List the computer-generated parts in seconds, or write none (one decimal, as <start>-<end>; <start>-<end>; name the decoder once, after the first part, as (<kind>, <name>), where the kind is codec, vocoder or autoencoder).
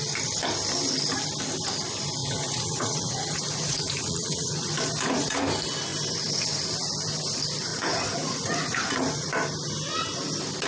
2.2-5.4 (vocoder, Vocos); 7.7-9.3